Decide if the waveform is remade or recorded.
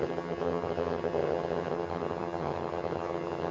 remade